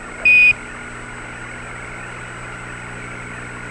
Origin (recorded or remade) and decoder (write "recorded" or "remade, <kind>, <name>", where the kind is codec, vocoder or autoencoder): recorded